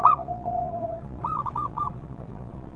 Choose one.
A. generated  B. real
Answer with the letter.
A